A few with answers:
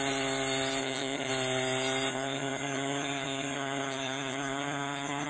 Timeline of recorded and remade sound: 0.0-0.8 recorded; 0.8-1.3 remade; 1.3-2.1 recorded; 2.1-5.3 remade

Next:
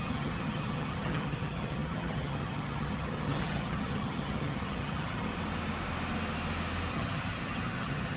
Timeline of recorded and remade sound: 0.0-5.3 remade; 5.3-6.9 recorded; 6.9-8.2 remade